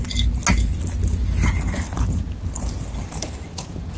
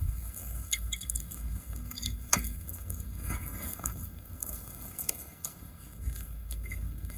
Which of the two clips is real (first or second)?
first